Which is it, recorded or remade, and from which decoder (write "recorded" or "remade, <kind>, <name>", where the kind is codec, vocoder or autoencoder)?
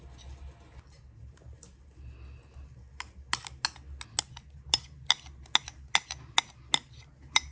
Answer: recorded